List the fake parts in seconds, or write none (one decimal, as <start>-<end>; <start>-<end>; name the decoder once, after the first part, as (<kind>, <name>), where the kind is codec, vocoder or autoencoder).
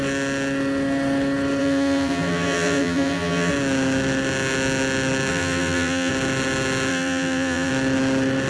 1.6-3.5 (vocoder, BigVGAN v2); 5.3-6.1; 6.9-7.7